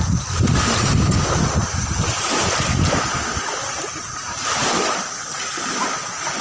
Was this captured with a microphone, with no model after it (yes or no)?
yes